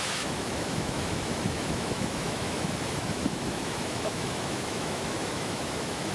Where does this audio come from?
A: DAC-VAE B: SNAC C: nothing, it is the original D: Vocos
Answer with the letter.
A